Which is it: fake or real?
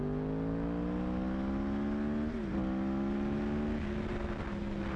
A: real